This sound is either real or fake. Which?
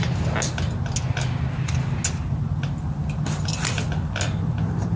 real